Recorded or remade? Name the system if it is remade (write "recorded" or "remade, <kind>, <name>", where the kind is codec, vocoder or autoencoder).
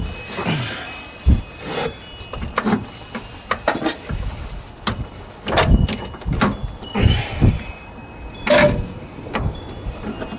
recorded